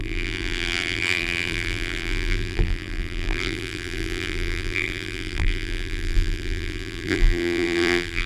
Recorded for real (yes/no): no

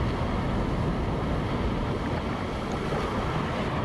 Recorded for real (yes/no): yes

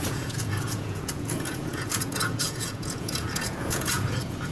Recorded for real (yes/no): no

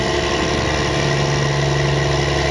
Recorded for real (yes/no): yes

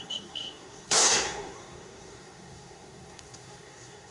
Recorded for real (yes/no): no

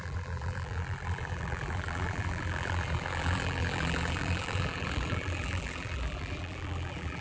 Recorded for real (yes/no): no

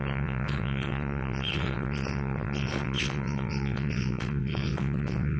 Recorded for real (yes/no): no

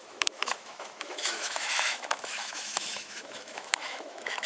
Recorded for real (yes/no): no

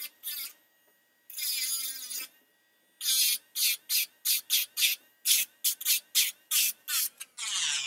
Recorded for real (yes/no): yes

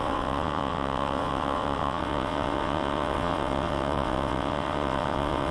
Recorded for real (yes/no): no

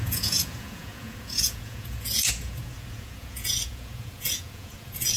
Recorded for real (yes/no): no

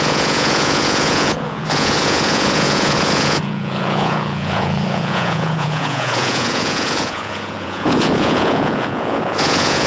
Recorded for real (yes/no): no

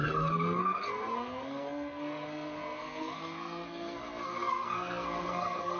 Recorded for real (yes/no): no